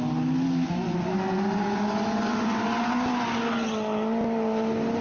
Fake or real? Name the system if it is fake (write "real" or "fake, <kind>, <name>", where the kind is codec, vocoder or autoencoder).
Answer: real